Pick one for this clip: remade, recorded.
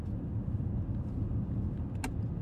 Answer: recorded